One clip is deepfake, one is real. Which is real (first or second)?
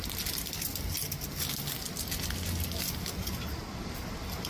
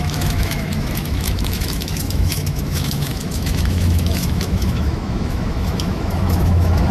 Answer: first